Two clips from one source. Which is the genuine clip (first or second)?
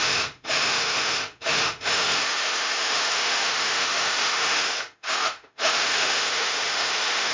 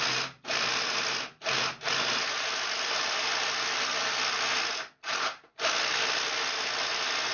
second